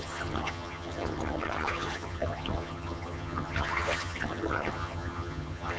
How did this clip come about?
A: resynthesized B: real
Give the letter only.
A